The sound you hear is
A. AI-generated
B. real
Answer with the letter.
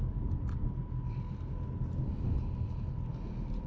B